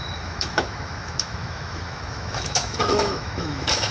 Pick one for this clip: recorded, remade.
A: remade